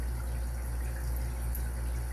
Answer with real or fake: real